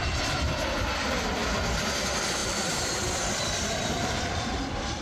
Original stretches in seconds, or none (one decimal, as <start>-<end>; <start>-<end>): 0.0-2.4